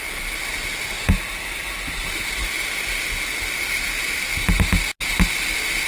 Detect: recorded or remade recorded